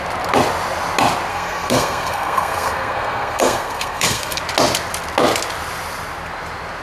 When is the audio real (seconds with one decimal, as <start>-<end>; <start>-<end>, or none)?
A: 0.0-1.3; 4.4-6.8